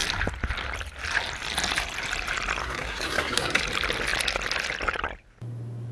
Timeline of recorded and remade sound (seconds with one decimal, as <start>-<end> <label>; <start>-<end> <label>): 0.0-2.6 recorded; 2.6-3.6 remade; 3.6-5.9 recorded